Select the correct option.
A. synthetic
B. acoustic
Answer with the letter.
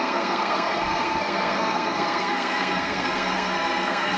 A